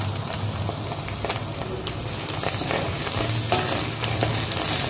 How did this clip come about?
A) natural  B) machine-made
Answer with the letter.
A